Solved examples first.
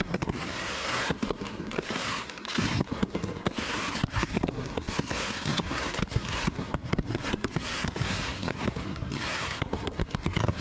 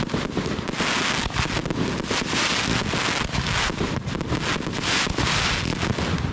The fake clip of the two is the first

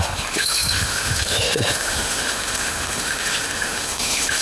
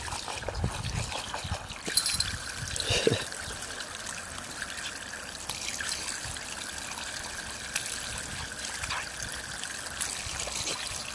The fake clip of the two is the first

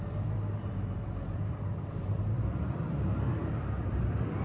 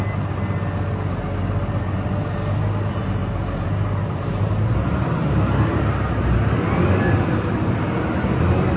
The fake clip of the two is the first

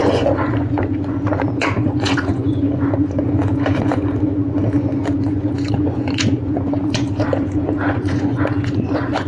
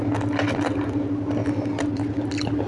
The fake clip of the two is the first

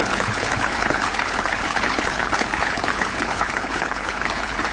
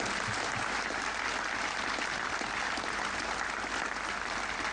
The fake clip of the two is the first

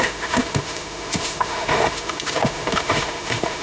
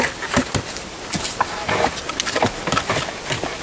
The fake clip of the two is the first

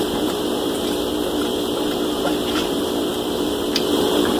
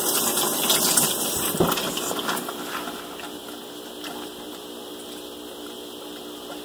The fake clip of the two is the first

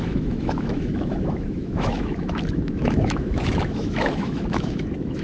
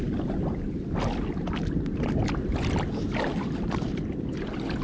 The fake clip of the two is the first